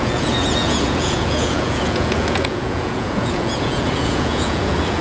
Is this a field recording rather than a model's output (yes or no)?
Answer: no